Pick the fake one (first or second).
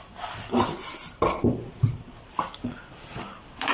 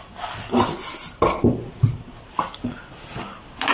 first